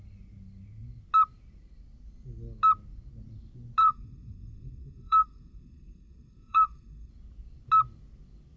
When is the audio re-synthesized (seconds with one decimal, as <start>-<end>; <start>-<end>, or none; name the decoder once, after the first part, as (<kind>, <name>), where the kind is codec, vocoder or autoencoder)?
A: 3.8-7.1 (codec, SNAC)